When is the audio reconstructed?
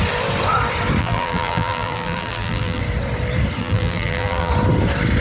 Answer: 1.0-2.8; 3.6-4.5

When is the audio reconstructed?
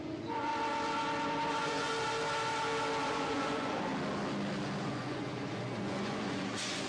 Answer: 0.0-0.5; 1.5-1.9; 3.1-3.9; 4.8-6.9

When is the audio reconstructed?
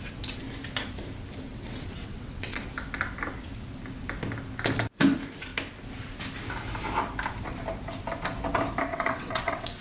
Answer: 1.5-2.6; 8.9-9.8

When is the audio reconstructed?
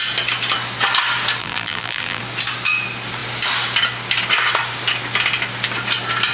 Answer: 1.4-2.2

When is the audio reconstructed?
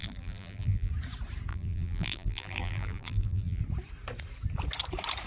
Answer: 0.0-0.9; 1.5-3.6